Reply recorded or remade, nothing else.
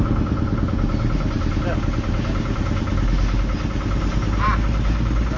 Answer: recorded